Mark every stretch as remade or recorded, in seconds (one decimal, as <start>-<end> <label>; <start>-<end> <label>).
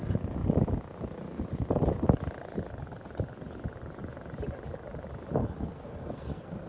0.0-5.4 recorded; 5.4-6.7 remade